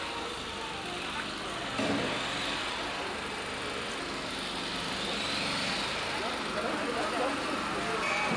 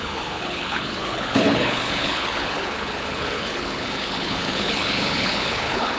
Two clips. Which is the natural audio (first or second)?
first